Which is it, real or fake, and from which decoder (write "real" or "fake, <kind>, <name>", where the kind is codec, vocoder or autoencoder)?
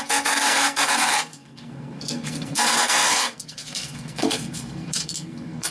fake, codec, SNAC